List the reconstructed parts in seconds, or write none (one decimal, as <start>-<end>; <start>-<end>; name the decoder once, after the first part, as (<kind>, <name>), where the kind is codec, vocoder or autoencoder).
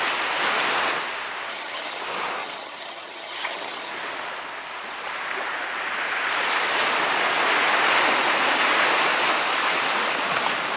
1.5-2.0 (vocoder, HiFi-GAN); 2.4-3.9